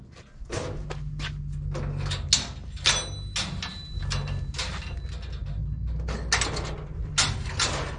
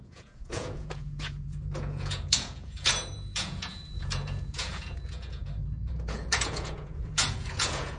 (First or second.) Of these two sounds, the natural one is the first